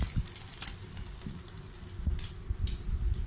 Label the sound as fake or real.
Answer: real